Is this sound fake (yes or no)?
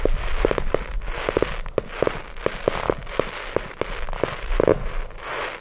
no